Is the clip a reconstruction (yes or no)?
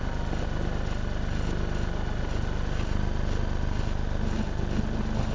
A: no